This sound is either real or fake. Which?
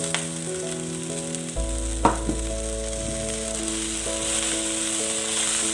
real